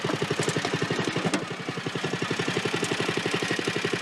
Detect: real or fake real